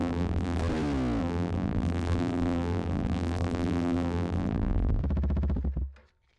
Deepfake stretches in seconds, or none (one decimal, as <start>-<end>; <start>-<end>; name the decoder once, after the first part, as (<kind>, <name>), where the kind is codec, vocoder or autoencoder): 0.0-0.6 (vocoder, BigVGAN v2); 1.2-5.0